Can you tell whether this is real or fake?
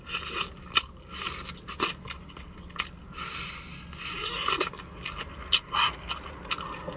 real